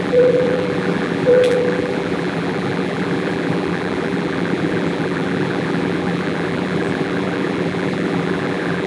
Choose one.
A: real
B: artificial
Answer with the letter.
B